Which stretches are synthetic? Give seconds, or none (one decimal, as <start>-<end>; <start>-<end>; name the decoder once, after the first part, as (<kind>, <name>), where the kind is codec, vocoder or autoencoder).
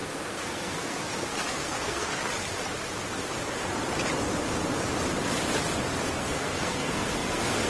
0.0-2.2 (codec, SNAC); 6.1-7.7